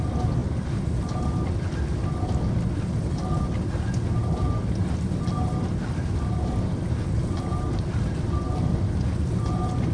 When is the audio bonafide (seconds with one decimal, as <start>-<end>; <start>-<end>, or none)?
0.0-9.9